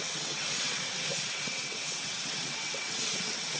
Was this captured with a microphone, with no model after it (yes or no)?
no